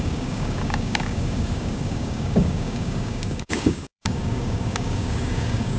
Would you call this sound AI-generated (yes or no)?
yes